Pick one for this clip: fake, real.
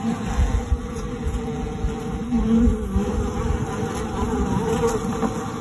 real